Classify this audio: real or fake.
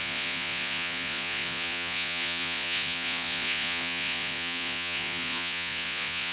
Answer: fake